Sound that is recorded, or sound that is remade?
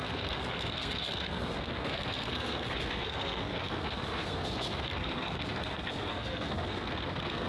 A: remade